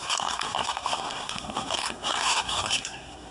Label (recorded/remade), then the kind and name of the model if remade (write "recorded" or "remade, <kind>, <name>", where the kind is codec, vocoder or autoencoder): remade, codec, SNAC